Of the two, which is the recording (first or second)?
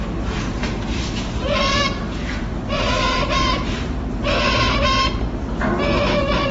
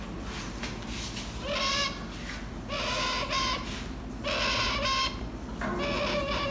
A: second